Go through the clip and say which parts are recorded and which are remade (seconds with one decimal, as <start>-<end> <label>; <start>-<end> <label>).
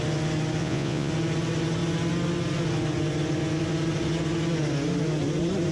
0.0-0.6 recorded; 0.6-1.1 remade; 1.1-5.7 recorded